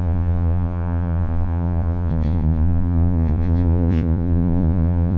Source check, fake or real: fake